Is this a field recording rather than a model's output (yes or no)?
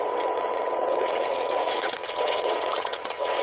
no